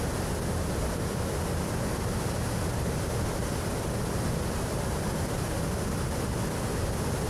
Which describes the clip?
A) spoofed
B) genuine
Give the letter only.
B